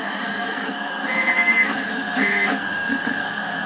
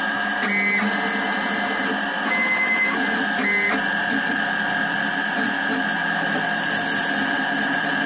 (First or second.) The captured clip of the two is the second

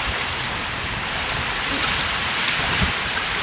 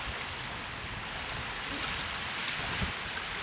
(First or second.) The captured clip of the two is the second